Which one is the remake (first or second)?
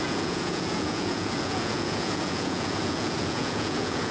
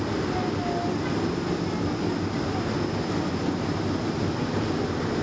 first